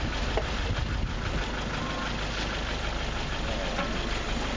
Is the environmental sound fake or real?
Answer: real